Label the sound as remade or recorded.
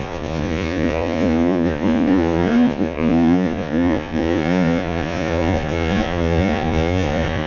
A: remade